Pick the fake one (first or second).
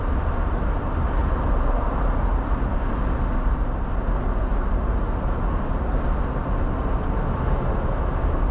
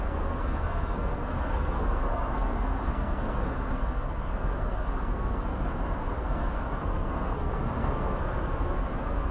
second